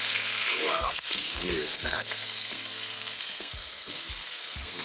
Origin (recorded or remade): remade